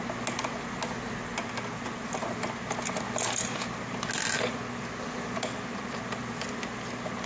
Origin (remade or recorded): recorded